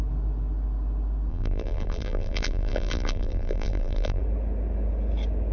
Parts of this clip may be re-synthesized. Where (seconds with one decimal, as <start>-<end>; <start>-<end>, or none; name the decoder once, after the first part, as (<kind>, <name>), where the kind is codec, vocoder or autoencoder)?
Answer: 1.3-4.2 (vocoder, BigVGAN v2)